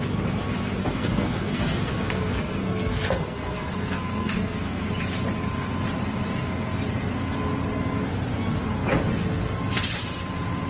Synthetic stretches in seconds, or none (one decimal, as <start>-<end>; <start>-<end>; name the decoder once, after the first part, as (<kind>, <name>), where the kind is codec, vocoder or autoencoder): 0.8-4.9 (codec, SNAC)